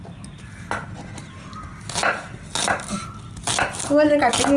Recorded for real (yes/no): yes